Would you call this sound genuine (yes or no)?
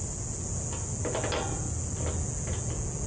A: yes